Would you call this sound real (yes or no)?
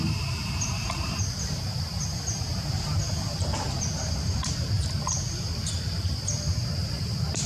no